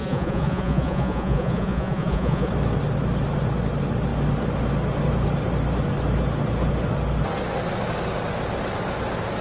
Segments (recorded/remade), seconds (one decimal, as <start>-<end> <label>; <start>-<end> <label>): 0.0-2.5 remade; 2.5-9.4 recorded